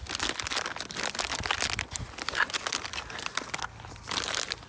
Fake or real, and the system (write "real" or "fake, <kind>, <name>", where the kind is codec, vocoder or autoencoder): real